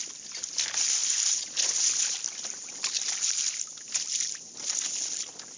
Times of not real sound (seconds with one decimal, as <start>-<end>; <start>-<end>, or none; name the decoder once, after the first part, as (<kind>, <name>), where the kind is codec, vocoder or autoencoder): none